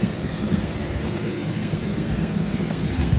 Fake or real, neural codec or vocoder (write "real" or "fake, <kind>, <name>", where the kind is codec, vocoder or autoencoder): fake, codec, SNAC